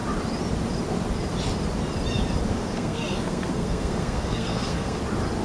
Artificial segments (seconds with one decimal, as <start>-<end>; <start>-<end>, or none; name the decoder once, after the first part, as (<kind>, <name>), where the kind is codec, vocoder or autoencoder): 2.5-5.0 (codec, SNAC)